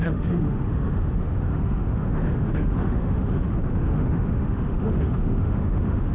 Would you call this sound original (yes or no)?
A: no